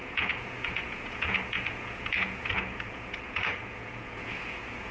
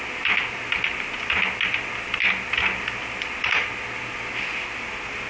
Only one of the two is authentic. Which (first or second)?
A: second